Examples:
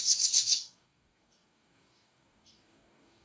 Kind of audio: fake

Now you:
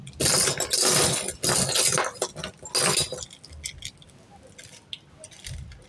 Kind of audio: real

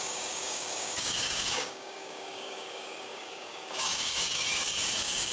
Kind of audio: fake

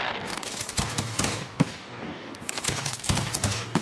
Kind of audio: fake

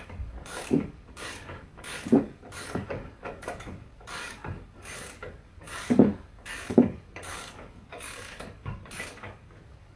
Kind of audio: fake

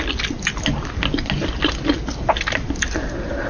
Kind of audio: real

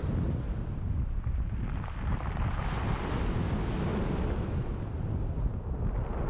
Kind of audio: real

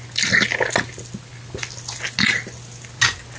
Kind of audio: real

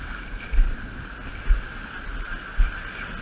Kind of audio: real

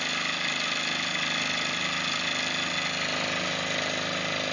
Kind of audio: real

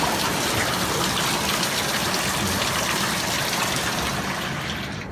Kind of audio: real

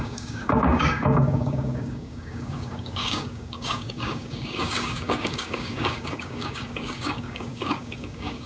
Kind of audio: fake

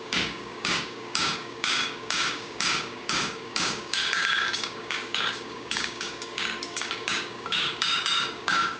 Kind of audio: fake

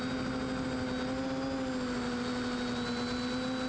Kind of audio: real